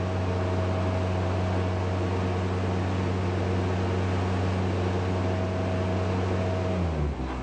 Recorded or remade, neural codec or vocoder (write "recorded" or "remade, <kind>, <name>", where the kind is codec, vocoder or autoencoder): recorded